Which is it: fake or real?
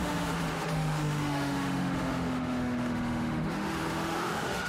fake